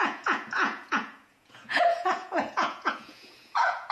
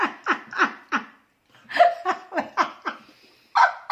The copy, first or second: first